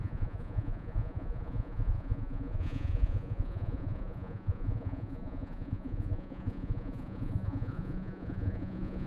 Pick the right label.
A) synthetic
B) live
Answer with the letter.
A